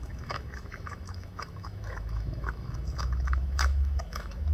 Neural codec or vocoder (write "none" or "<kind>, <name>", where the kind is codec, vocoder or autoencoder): autoencoder, DAC-VAE